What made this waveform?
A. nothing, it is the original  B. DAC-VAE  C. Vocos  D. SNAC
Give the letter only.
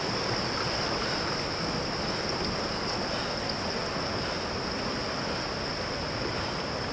A